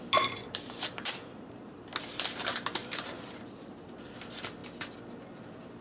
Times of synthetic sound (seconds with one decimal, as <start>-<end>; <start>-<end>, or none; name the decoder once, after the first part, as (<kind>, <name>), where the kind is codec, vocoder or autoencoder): 0.4-1.8 (vocoder, BigVGAN v2); 2.8-4.0